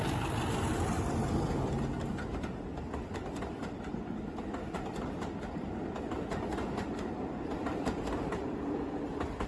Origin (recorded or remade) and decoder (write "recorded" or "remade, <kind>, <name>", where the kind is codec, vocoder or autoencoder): recorded